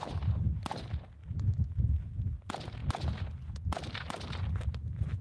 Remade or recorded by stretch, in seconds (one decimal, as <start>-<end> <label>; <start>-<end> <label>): 0.0-5.2 recorded